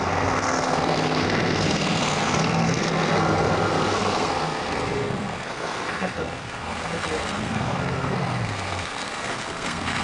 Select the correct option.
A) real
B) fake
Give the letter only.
B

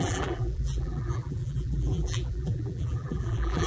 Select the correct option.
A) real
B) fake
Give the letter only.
B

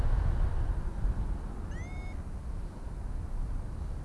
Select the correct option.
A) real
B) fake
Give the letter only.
A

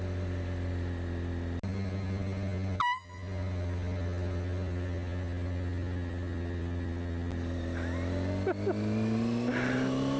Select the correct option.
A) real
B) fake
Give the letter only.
A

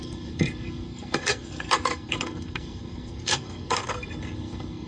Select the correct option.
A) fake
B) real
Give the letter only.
A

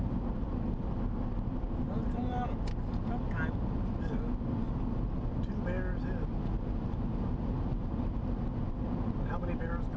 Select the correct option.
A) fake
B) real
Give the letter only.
B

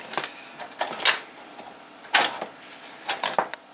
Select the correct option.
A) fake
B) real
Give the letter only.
B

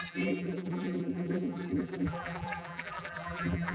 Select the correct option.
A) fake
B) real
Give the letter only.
A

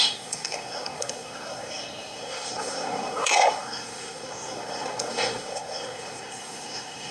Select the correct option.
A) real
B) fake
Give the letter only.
B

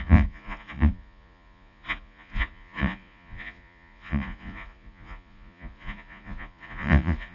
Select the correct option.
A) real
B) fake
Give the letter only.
B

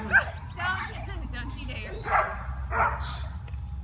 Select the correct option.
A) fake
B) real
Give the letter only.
B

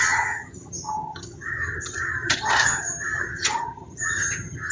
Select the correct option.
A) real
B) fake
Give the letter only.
B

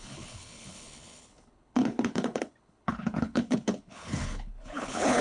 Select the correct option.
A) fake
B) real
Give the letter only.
A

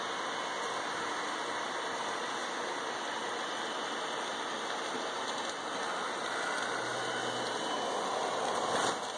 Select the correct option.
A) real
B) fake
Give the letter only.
A